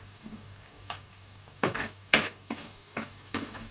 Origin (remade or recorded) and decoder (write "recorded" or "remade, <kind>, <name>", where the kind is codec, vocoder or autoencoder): remade, codec, DAC